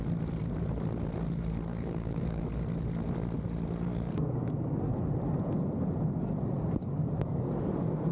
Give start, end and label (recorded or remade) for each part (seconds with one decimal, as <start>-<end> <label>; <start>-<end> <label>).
0.0-1.7 recorded; 1.7-2.4 remade; 2.4-3.9 recorded; 3.9-4.8 remade; 4.8-6.8 recorded; 6.8-7.5 remade; 7.5-8.1 recorded